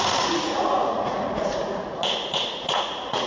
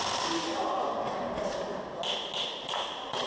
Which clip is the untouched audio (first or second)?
second